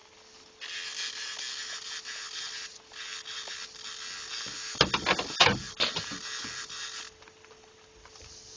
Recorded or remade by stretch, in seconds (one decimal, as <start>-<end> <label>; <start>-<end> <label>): 0.0-8.6 recorded